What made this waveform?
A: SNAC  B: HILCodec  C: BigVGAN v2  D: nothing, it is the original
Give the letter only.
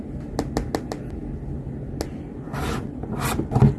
D